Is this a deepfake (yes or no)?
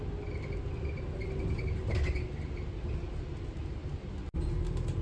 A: no